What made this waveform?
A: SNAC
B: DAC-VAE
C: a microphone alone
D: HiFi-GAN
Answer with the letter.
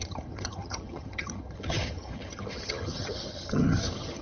D